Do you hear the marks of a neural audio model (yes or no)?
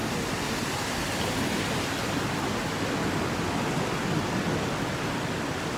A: no